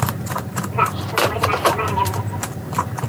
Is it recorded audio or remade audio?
remade